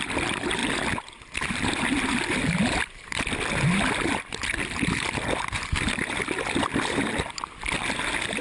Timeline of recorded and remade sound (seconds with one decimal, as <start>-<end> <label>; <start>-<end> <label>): 0.0-8.4 recorded